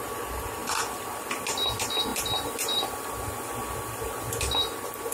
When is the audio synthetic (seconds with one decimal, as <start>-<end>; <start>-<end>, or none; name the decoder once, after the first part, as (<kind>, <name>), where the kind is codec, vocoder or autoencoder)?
2.1-2.9 (vocoder, BigVGAN v2)